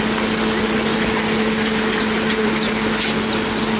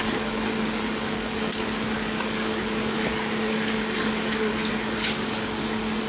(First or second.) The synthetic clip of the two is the second